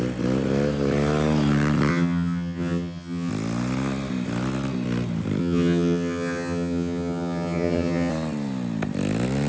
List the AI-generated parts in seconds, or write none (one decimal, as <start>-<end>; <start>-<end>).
1.9-3.3; 5.4-8.1